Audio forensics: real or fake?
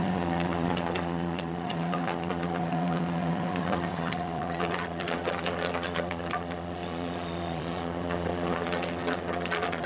fake